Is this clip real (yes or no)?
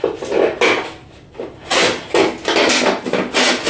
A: yes